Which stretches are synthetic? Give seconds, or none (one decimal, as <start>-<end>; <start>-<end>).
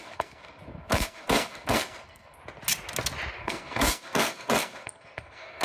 0.0-2.4; 3.4-5.6